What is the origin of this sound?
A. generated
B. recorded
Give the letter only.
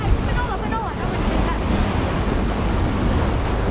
B